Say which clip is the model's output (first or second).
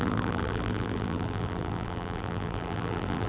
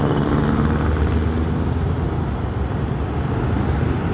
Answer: first